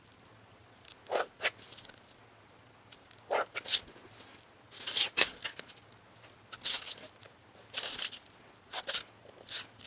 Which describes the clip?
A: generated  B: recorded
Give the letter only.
B